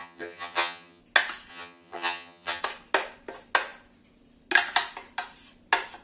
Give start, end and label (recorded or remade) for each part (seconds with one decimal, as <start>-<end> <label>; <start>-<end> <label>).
0.0-1.0 remade; 1.0-1.5 recorded; 1.5-2.6 remade; 2.6-6.0 recorded